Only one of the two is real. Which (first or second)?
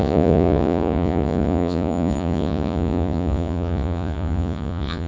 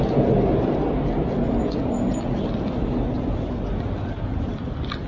second